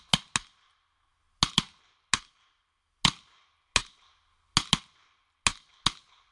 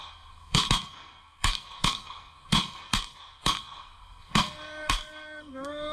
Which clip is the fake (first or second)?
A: second